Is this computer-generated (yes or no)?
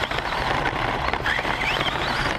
yes